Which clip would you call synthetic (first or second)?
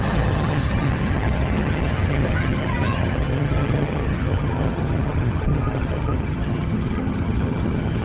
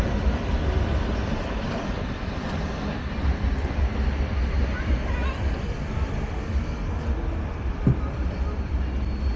first